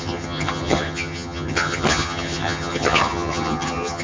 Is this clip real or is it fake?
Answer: fake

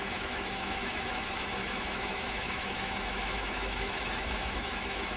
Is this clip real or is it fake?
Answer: fake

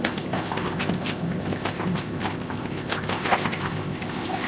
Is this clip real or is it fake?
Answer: fake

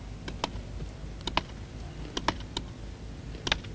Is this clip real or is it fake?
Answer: real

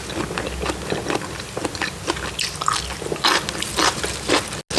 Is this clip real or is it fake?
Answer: real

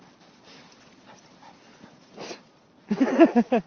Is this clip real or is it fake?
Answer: real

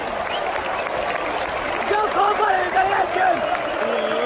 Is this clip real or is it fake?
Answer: real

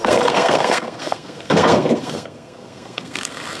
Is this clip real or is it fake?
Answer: fake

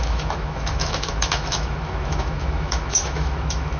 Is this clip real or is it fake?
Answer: fake